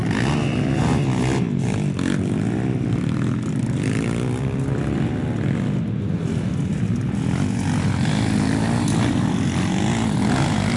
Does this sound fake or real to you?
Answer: real